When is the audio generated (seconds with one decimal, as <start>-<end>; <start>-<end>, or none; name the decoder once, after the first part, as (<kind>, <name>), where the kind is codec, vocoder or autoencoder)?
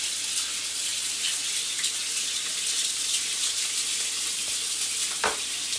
none